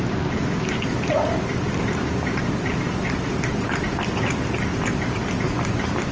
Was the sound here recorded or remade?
recorded